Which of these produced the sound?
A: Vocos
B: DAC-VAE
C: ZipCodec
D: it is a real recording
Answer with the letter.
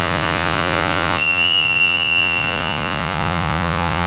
A